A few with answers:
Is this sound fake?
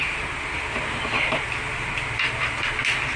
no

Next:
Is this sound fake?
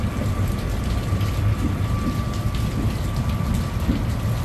no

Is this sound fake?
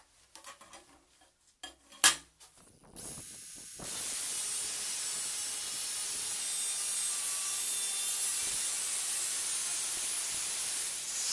no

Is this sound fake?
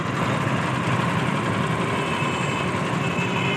no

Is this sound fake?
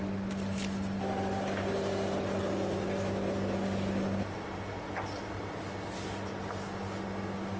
no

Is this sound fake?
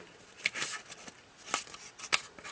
no